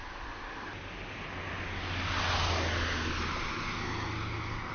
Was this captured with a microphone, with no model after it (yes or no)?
yes